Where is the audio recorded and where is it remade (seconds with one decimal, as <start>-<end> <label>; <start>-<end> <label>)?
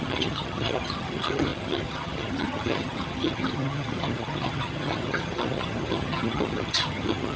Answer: 0.0-7.4 remade